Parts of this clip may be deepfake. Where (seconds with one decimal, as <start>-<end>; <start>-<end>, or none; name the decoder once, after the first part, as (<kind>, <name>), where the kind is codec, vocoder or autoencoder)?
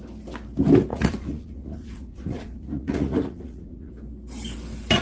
0.9-3.9 (vocoder, Vocos)